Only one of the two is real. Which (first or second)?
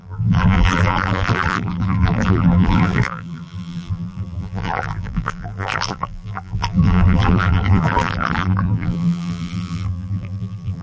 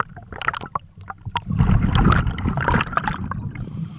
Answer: second